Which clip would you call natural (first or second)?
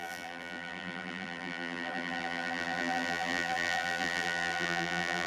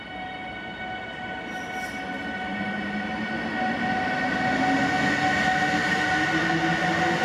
second